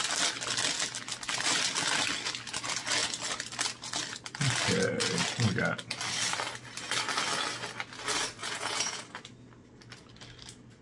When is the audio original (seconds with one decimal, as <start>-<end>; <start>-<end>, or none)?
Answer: 0.0-8.4; 9.0-10.8